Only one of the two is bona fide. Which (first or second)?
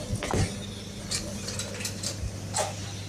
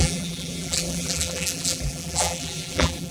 first